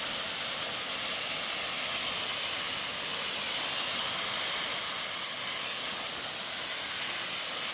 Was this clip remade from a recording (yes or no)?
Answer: no